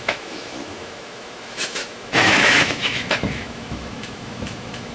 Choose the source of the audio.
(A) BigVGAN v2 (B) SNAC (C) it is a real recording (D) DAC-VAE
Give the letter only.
D